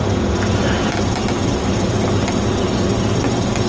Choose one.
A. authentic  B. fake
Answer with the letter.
A